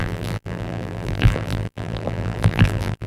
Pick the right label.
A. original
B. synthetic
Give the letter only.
B